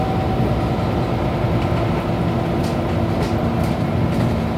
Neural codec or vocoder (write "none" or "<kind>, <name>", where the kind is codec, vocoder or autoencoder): none